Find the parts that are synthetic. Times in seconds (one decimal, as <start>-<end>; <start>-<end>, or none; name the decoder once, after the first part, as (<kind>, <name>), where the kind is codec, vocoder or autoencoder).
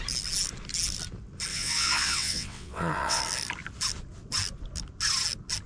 1.5-3.2 (vocoder, WaveNeXt)